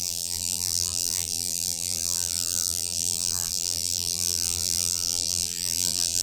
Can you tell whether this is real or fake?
fake